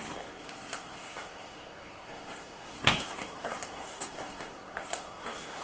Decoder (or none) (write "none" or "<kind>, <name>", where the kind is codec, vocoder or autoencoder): codec, SNAC